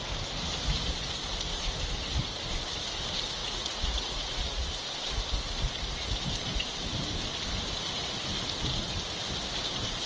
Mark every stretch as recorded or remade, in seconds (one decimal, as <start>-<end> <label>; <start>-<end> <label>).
0.0-3.4 recorded; 3.4-4.7 remade; 4.7-10.1 recorded